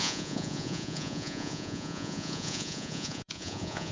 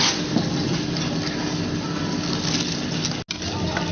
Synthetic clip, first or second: first